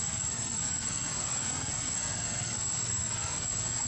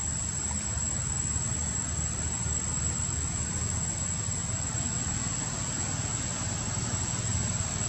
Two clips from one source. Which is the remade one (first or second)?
first